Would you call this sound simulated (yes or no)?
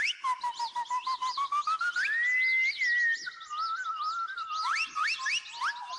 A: no